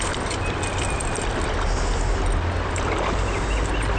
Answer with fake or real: real